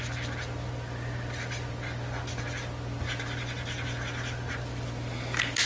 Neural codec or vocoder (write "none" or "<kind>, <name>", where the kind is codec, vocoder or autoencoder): none